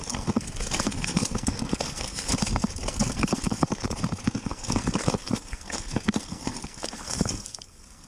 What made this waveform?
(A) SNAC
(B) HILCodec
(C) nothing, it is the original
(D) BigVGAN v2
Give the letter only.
A